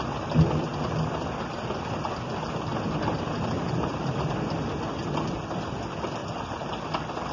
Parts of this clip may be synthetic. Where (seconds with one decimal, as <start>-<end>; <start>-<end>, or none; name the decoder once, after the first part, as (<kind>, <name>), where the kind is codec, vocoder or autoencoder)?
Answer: 2.7-4.1 (vocoder, BigVGAN v2); 6.2-6.7